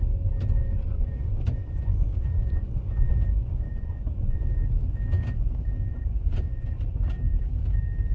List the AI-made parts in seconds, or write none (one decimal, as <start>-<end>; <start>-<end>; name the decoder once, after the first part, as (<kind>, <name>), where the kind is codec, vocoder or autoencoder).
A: 0.6-4.5 (vocoder, Vocos); 5.9-6.7